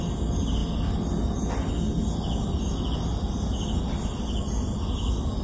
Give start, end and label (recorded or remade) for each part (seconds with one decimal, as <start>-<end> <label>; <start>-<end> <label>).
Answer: 0.0-5.4 recorded